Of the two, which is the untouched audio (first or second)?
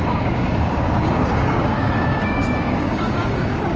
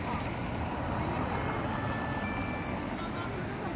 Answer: second